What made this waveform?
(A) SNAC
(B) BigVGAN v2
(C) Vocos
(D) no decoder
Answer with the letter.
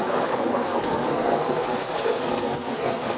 A